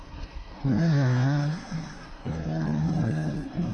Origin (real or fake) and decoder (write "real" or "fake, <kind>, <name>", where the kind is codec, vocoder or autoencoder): fake, codec, SNAC